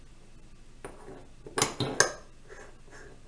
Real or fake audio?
real